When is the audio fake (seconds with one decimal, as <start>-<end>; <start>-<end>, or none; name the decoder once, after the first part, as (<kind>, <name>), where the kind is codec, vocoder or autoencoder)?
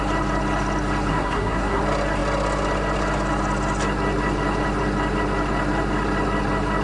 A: 1.1-1.8 (codec, SNAC)